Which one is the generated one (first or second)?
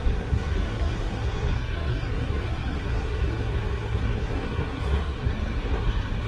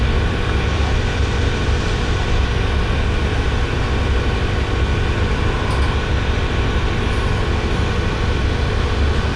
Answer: first